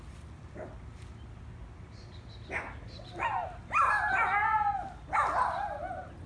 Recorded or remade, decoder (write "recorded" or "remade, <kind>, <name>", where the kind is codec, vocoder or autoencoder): recorded